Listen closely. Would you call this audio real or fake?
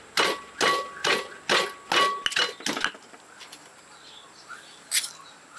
real